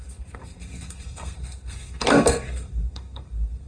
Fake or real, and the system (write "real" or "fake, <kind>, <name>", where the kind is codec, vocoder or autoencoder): fake, codec, SNAC